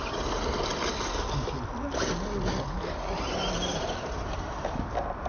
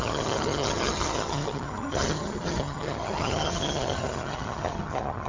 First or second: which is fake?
second